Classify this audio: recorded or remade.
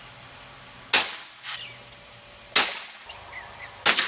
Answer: recorded